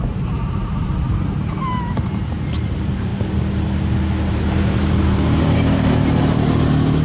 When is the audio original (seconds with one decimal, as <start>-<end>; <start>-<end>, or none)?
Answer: 3.1-4.2